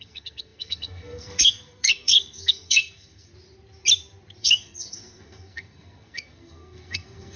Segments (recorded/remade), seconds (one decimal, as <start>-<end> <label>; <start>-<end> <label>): 0.0-3.3 remade; 3.3-4.4 recorded; 4.4-7.4 remade